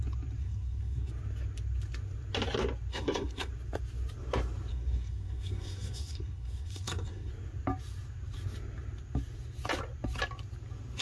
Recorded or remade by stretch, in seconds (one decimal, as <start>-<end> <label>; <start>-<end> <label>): 0.0-0.4 recorded; 0.4-1.1 remade; 1.1-2.9 recorded; 2.9-3.5 remade; 3.5-4.7 recorded; 4.7-7.3 remade; 7.3-11.0 recorded